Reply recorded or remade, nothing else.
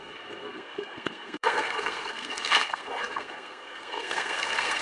remade